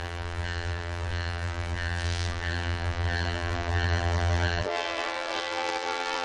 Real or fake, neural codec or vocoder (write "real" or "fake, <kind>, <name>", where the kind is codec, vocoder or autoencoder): fake, vocoder, BigVGAN v2